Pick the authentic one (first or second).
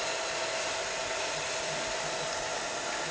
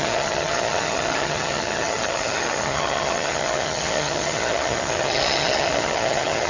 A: first